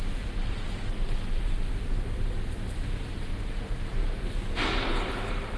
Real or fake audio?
fake